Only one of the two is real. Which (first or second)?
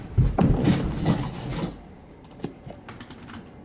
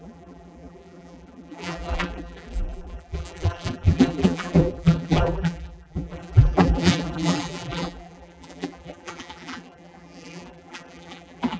first